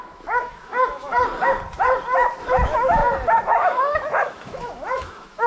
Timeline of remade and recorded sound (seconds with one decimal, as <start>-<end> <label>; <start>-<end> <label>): 0.0-1.1 remade; 1.1-2.4 recorded; 2.4-3.0 remade; 3.0-3.5 recorded; 3.5-5.5 remade